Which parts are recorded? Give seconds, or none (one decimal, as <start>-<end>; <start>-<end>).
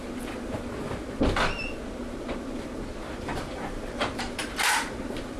0.0-3.2; 4.4-5.0